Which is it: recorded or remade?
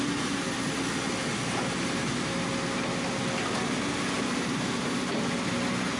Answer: recorded